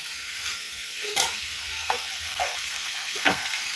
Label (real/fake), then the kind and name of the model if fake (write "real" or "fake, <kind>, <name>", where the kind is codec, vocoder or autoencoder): fake, codec, SNAC